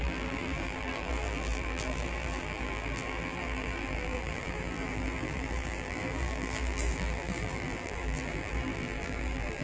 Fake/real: fake